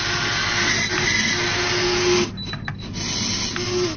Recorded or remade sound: recorded